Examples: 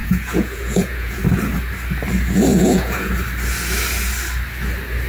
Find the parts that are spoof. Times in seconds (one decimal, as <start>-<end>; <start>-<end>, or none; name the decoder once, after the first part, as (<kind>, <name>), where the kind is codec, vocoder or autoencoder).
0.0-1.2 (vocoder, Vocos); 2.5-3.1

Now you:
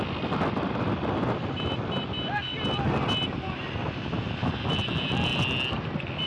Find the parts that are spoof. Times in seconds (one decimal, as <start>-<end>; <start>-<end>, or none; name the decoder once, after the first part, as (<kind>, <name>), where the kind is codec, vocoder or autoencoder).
none

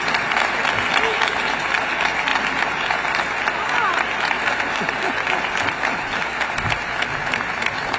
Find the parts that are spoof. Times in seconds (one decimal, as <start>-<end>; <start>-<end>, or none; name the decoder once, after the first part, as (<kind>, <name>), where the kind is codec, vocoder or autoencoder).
none

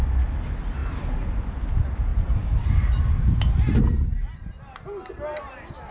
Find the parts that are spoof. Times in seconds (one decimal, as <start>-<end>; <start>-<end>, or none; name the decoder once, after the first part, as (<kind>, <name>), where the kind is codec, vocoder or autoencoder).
none

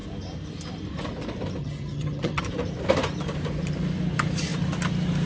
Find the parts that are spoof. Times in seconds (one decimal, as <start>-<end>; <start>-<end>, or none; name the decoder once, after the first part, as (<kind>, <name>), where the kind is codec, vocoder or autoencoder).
1.6-2.4 (vocoder, HiFi-GAN)